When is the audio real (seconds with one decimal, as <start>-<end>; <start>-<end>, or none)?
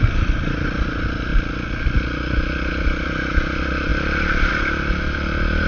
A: 1.3-2.7; 3.9-4.5